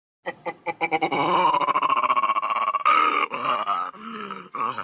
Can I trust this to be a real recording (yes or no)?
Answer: yes